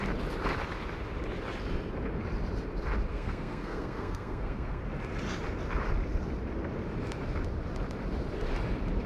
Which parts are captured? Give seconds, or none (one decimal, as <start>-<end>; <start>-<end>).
0.0-3.1; 4.8-9.1